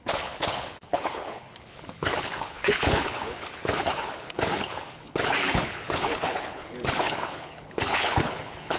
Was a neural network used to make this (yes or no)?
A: yes